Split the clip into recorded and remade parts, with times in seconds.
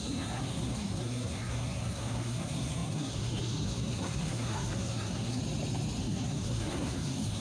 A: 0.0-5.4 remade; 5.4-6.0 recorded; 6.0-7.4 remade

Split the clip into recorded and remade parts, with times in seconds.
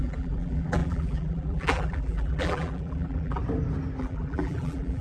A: 0.0-3.4 remade; 3.4-4.0 recorded; 4.0-5.0 remade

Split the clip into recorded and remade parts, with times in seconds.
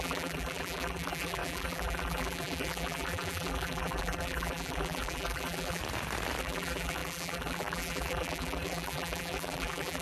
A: 0.0-5.8 remade; 5.8-6.4 recorded; 6.4-10.0 remade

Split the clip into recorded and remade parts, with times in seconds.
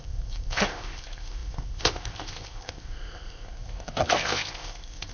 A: 0.0-5.1 remade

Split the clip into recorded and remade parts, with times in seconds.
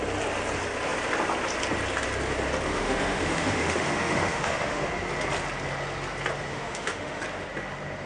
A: 0.0-2.7 recorded; 2.7-4.9 remade; 4.9-6.5 recorded; 6.5-7.2 remade; 7.2-8.1 recorded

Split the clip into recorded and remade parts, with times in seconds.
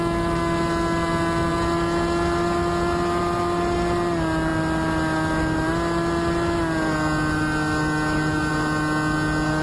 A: 0.0-9.6 recorded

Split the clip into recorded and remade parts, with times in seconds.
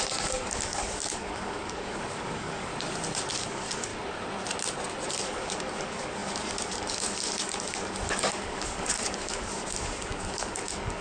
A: 0.0-2.7 remade; 2.7-3.3 recorded; 3.3-3.9 remade; 3.9-5.1 recorded; 5.1-11.0 remade